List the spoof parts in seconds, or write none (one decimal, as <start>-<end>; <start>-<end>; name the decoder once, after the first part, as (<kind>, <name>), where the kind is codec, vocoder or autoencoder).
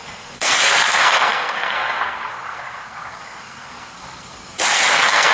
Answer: 0.0-5.3 (codec, SNAC)